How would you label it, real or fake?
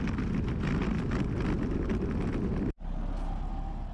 real